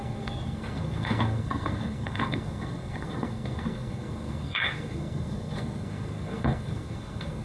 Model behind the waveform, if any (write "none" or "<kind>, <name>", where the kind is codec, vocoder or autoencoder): codec, SNAC